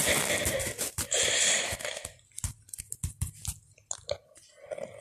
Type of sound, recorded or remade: recorded